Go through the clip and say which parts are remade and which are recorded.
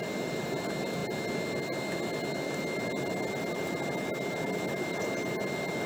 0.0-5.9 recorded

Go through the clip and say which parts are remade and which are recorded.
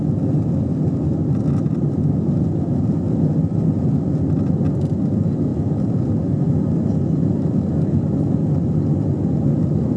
0.0-10.0 recorded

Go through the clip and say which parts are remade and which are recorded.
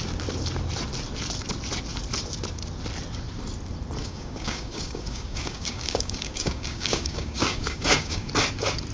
0.0-4.0 recorded; 4.0-8.3 remade; 8.3-8.9 recorded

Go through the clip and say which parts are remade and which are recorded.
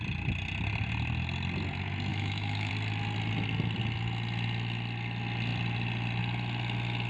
0.0-2.1 recorded; 2.1-2.7 remade; 2.7-7.1 recorded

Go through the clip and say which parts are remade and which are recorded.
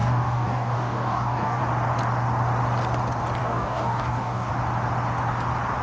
0.0-1.6 remade; 1.6-3.4 recorded; 3.4-4.5 remade; 4.5-5.8 recorded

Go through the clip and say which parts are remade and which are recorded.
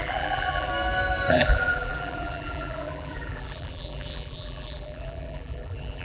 0.0-0.7 remade; 0.7-1.3 recorded; 1.3-6.0 remade